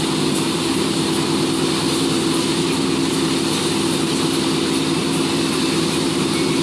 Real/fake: real